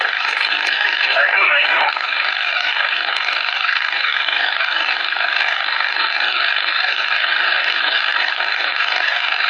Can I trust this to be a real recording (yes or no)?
no